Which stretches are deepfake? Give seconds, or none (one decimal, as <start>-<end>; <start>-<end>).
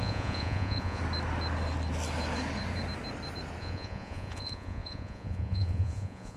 0.0-1.0; 3.6-6.4